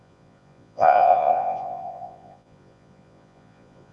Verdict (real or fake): fake